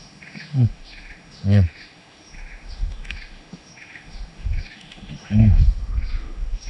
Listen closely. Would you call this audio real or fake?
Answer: fake